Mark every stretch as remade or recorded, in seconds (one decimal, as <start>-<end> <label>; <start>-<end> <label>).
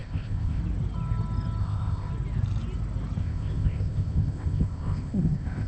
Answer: 0.0-0.6 remade; 0.6-1.6 recorded; 1.6-2.1 remade; 2.1-3.2 recorded; 3.2-5.7 remade